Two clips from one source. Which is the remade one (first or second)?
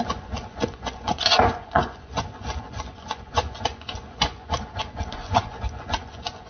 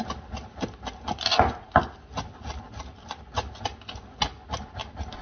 first